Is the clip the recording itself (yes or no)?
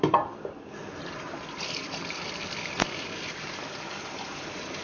no